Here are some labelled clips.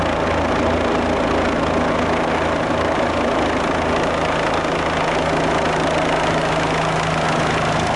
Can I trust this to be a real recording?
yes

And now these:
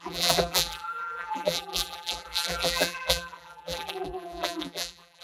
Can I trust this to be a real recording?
no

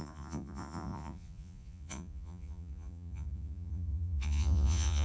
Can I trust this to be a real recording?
no